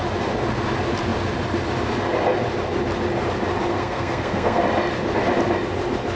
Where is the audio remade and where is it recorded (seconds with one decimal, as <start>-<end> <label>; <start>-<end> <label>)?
0.0-3.7 recorded; 3.7-4.6 remade; 4.6-6.2 recorded